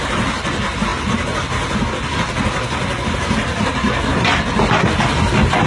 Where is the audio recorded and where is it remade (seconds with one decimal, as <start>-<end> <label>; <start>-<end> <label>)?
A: 0.0-5.7 recorded